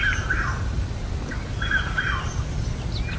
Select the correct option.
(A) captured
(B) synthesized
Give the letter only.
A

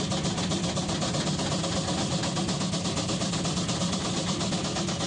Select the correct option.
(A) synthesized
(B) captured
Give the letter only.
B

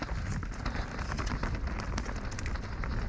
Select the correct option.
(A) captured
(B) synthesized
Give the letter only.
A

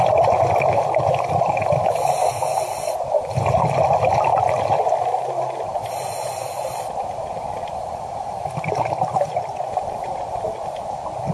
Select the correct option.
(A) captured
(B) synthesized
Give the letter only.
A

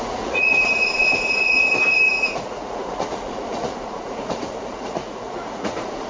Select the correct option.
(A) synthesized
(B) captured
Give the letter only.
A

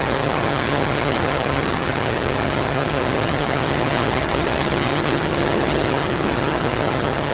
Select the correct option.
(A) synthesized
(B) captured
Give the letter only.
A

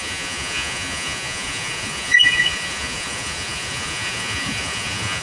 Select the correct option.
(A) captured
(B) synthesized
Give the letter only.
B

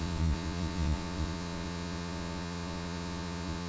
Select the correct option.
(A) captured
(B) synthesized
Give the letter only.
B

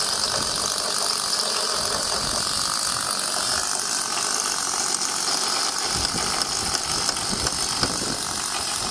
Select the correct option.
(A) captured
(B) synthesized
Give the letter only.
A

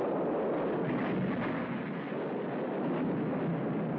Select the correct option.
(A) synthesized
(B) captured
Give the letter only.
B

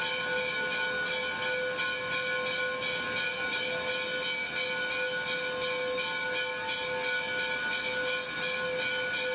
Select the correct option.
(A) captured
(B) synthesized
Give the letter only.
A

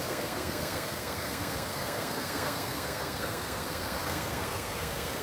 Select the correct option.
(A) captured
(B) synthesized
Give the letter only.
B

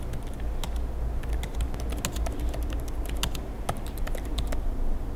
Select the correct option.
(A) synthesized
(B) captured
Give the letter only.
B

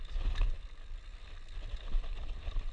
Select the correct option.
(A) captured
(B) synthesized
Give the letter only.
A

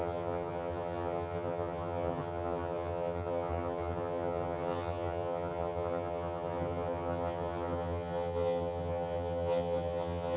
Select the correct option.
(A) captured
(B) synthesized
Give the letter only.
B